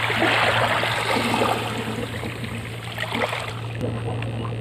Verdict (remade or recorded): recorded